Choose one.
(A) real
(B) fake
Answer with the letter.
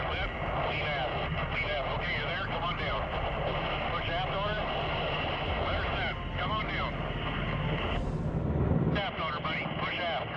A